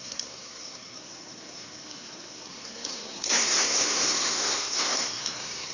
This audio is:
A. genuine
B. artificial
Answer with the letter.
B